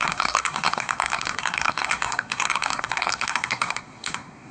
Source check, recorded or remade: remade